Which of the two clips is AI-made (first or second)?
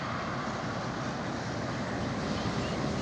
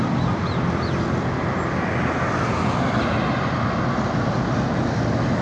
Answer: first